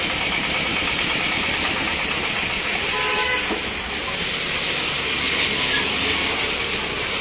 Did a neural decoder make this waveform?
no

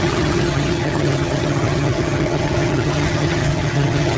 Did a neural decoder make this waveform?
yes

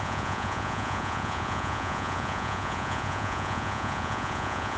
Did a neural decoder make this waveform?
yes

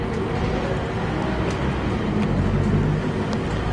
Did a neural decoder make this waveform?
no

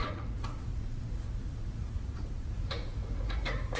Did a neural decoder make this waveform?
yes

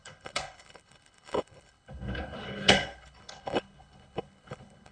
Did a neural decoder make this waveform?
yes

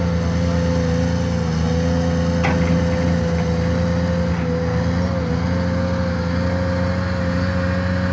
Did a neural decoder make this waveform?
no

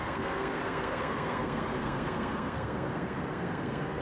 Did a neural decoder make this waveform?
yes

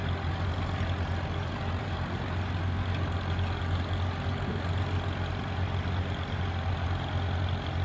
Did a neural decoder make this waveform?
no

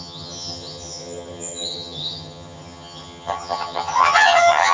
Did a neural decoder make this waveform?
yes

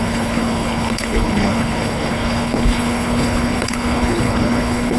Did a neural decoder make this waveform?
yes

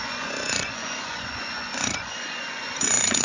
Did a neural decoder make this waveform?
yes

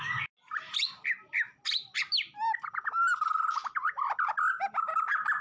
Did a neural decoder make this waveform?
no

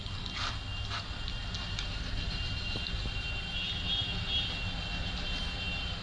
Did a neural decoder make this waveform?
no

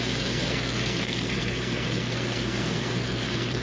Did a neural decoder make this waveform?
yes